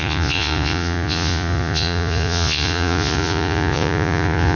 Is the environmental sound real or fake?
fake